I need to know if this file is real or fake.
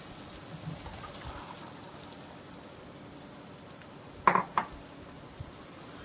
real